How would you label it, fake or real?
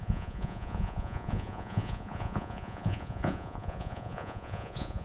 fake